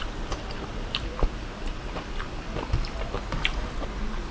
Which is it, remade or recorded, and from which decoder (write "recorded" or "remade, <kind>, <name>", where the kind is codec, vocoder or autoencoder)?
recorded